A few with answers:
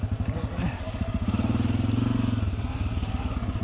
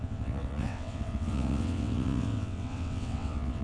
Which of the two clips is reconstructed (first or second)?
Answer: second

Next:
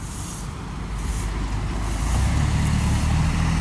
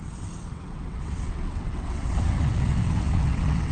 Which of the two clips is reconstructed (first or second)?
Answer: second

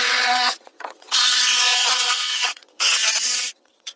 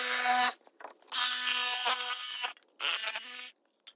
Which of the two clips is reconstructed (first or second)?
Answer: first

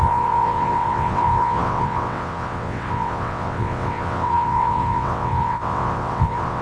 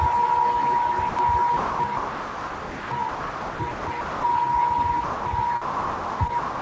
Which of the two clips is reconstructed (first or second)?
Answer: first